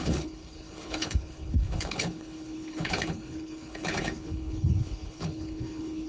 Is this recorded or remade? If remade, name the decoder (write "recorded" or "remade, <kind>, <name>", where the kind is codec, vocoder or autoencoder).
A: remade, codec, HILCodec